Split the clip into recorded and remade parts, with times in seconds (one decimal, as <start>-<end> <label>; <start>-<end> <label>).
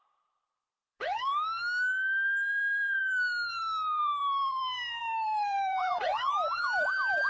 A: 0.0-1.3 remade; 1.3-2.5 recorded; 2.5-7.3 remade